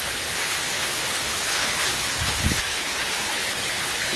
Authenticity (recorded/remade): remade